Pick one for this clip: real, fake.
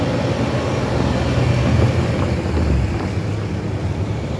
real